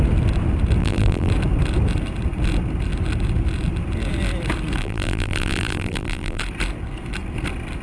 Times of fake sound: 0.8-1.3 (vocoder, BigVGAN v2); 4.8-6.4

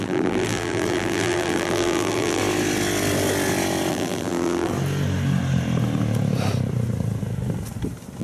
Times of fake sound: 0.0-2.4 (vocoder, BigVGAN v2); 3.9-4.7

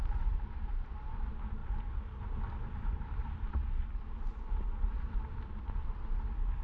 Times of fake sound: 1.6-5.6 (vocoder, BigVGAN v2)

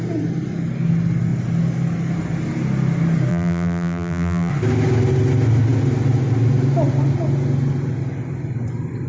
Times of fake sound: 3.3-4.5 (vocoder, BigVGAN v2)